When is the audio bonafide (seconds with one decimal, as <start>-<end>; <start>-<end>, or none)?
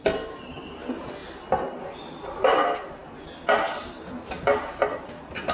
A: 0.0-5.5